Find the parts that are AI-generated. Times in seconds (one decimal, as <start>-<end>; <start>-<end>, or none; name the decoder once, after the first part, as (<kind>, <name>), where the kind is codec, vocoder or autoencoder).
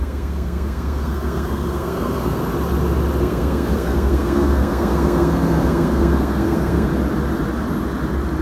0.0-2.4 (codec, SNAC); 3.2-6.9